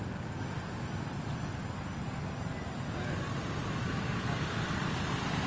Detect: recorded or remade recorded